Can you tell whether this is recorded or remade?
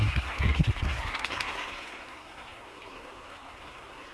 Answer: remade